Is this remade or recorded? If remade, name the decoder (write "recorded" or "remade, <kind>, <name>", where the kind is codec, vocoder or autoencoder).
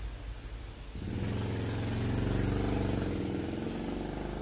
recorded